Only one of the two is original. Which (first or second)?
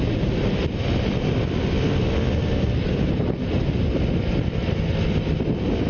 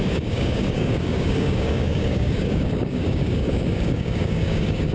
first